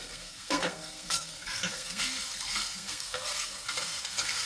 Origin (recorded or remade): remade